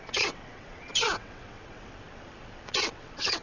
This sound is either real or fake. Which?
fake